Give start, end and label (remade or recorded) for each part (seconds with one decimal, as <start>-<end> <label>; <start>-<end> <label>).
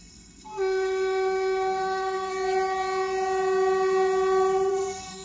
0.0-2.3 remade; 2.3-4.7 recorded; 4.7-5.2 remade